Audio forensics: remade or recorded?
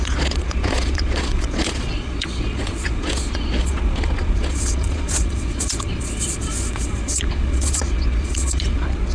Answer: remade